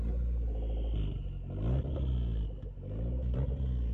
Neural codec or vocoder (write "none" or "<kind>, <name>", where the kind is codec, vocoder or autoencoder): none